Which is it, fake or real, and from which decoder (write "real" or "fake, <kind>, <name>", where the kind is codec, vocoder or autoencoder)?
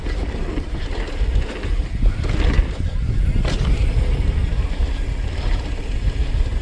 real